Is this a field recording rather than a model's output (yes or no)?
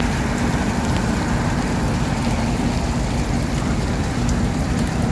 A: no